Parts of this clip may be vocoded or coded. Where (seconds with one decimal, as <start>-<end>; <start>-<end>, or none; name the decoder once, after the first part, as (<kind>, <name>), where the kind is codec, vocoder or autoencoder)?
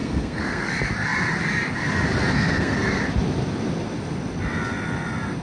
0.0-0.7 (codec, SNAC); 2.3-3.0